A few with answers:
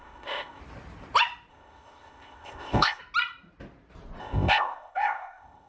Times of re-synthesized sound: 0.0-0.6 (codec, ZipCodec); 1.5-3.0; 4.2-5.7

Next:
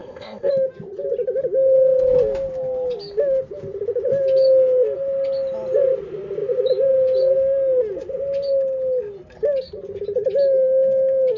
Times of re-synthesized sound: 0.0-0.5 (codec, ZipCodec)

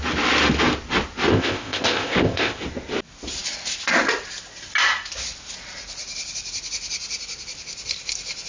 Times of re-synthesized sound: 1.3-2.6 (codec, ZipCodec)

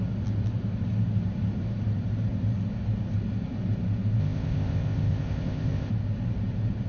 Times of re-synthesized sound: 4.2-5.9 (codec, ZipCodec)

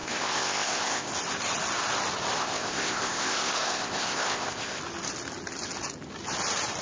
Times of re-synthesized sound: 0.0-1.1 (codec, ZipCodec); 2.4-4.8

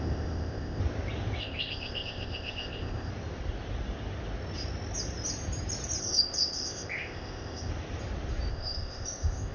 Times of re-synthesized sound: 0.0-0.8 (codec, ZipCodec); 1.4-3.1; 6.0-7.7; 8.5-9.5